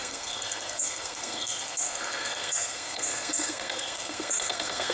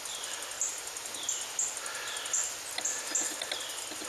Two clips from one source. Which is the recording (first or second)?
second